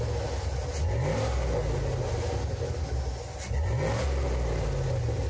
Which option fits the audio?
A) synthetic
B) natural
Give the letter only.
B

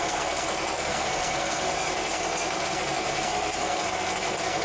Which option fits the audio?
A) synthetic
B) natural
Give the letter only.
A